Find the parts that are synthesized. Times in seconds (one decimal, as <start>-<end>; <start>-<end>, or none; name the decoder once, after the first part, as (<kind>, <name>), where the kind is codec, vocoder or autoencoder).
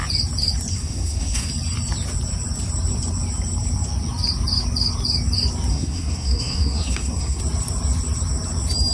0.7-1.5 (codec, SNAC); 5.7-7.4